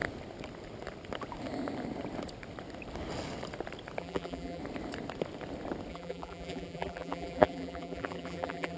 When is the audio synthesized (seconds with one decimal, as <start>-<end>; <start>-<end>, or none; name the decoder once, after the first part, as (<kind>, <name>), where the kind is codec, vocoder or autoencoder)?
4.0-4.6 (vocoder, BigVGAN v2); 5.9-8.8